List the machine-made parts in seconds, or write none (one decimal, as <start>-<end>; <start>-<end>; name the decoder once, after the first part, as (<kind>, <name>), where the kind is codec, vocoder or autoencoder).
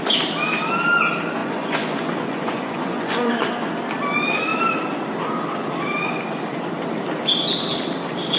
1.4-3.3 (vocoder, Vocos)